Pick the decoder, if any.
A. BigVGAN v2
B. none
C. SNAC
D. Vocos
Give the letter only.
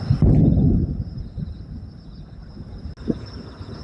B